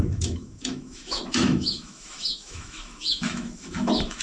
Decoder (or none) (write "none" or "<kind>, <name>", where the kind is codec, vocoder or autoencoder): autoencoder, DAC-VAE